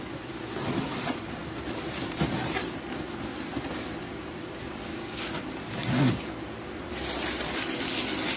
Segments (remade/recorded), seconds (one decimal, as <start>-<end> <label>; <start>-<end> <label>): 0.0-4.8 recorded; 4.8-5.4 remade; 5.4-8.4 recorded